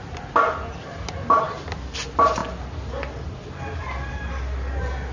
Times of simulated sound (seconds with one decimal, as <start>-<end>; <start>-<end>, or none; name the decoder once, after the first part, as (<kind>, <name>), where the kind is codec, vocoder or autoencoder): none

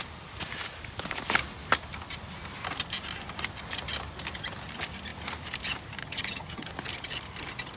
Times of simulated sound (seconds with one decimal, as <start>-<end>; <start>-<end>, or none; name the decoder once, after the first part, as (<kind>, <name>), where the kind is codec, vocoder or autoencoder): 6.0-6.7 (vocoder, HiFi-GAN)

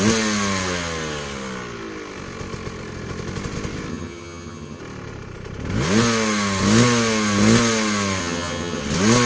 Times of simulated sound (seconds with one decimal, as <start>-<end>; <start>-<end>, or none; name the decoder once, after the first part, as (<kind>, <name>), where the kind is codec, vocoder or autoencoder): 3.9-4.8 (vocoder, HiFi-GAN); 8.2-8.8

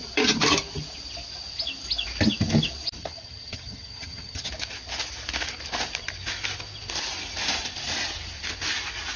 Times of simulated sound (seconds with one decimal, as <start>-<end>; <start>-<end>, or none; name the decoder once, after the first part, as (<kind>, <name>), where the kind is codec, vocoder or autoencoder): 3.0-4.5 (vocoder, HiFi-GAN)

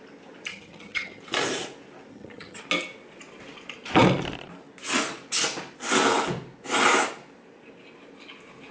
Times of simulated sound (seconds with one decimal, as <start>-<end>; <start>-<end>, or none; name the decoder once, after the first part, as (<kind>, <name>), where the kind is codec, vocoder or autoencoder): 0.5-1.2 (vocoder, HiFi-GAN); 2.1-2.6